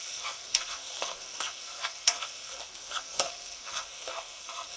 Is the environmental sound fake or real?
fake